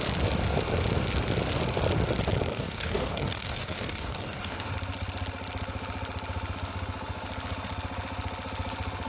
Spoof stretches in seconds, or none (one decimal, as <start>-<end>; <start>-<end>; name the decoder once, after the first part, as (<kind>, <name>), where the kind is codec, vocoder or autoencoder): 2.5-4.7 (codec, DAC)